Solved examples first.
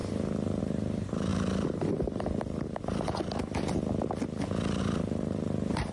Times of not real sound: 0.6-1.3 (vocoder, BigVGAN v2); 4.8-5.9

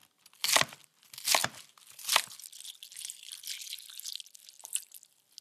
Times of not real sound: none

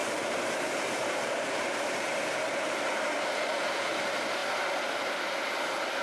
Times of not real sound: 0.0-3.6 (vocoder, BigVGAN v2)

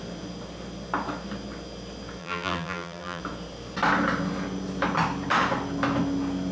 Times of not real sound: 2.2-3.2 (vocoder, BigVGAN v2)